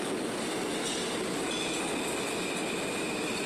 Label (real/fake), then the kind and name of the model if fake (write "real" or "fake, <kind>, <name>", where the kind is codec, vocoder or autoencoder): real